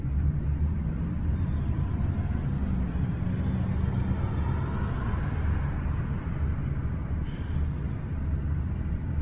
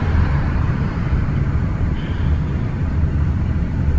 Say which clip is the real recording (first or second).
first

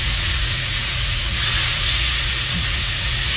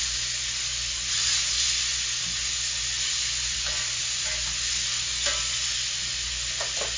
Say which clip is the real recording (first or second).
second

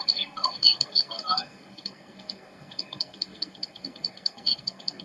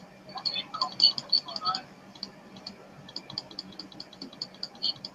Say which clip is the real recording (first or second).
second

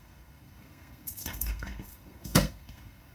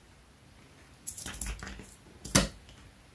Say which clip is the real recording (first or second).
second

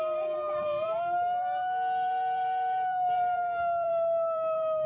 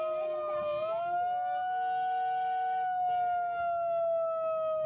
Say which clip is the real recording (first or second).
second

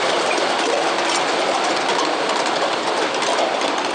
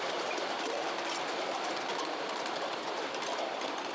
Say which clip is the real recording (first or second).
first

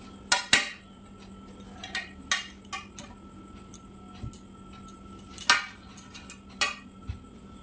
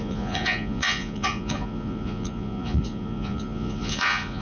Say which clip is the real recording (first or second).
first